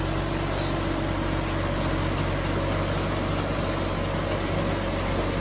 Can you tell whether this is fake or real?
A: real